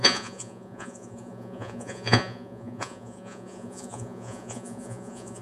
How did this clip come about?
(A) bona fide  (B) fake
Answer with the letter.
B